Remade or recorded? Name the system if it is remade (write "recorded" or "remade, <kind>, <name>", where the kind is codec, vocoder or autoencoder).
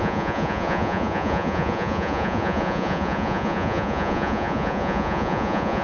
remade, vocoder, Vocos